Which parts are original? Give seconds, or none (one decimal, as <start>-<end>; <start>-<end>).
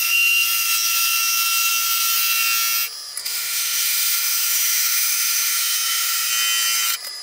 0.0-3.2; 6.3-7.2